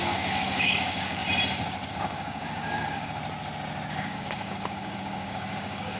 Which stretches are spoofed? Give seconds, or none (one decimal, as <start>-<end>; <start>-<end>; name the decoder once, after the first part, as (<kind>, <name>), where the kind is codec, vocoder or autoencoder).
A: 0.0-1.2 (codec, DAC); 1.9-3.2; 3.9-6.0